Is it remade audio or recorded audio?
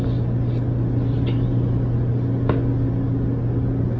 recorded